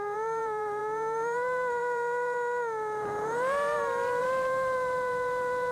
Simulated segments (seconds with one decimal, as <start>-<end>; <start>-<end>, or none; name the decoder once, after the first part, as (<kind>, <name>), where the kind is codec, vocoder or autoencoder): 0.0-5.7 (vocoder, BigVGAN v2)